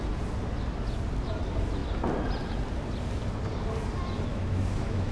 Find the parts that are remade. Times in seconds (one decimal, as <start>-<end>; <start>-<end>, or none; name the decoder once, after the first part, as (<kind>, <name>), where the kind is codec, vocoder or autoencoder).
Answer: 4.3-5.1 (autoencoder, DAC-VAE)